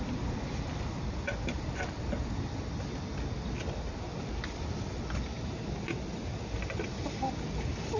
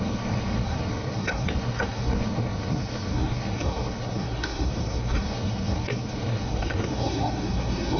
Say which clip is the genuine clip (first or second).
first